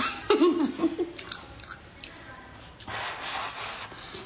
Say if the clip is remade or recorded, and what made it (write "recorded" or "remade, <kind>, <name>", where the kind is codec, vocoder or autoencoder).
recorded